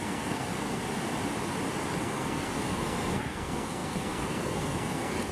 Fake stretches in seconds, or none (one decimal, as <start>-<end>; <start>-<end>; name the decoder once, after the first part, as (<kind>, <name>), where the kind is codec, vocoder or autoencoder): 0.0-0.8 (codec, SNAC); 2.0-5.3

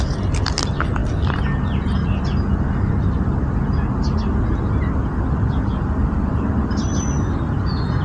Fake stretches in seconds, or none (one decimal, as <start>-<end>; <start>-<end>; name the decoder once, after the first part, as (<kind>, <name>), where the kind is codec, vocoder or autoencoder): none